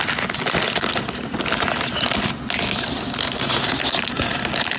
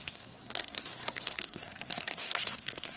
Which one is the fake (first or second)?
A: second